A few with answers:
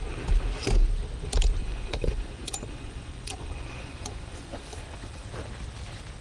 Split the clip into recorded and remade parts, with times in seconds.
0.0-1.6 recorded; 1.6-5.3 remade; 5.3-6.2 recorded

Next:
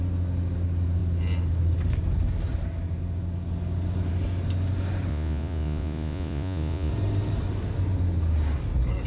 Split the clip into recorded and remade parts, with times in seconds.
0.0-5.1 recorded; 5.1-6.9 remade; 6.9-9.1 recorded

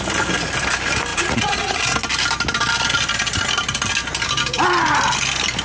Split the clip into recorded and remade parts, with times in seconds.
0.0-1.1 recorded; 1.1-1.8 remade; 1.8-5.6 recorded

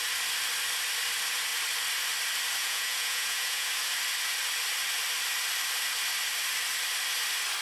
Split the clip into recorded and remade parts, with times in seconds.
0.0-2.6 recorded; 2.6-3.7 remade; 3.7-7.6 recorded

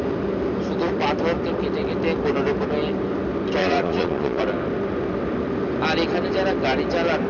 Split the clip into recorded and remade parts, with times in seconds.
0.0-3.6 recorded; 3.6-4.4 remade; 4.4-7.3 recorded

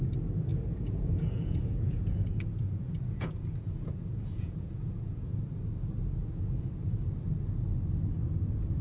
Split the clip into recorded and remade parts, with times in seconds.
0.0-0.5 recorded; 0.5-5.4 remade; 5.4-6.2 recorded; 6.2-6.7 remade; 6.7-8.8 recorded